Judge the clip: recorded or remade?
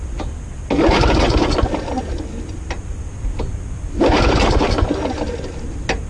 recorded